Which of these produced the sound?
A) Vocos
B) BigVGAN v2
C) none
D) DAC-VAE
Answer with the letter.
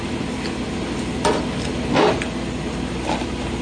C